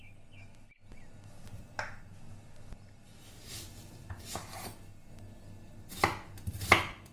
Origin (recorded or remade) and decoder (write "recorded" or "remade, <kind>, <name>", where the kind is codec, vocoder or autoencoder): recorded